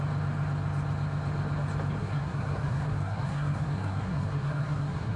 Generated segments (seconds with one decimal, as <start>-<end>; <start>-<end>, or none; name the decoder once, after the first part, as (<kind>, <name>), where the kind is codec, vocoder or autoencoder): 2.0-5.2 (codec, SNAC)